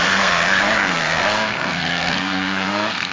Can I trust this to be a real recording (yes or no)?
no